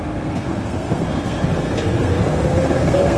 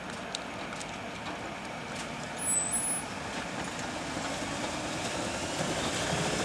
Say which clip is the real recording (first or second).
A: second